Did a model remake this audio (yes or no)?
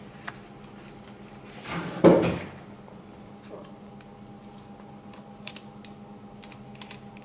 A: no